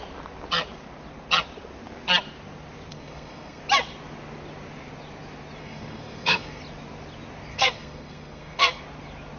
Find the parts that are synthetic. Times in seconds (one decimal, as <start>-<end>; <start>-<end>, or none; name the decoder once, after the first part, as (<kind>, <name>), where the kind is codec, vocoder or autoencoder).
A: 2.9-3.6 (codec, SNAC); 5.6-6.6; 7.5-8.8